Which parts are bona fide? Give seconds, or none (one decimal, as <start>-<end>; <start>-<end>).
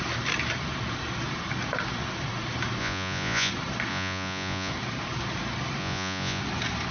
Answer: 0.0-2.8; 3.5-3.9; 4.7-5.8; 6.4-6.9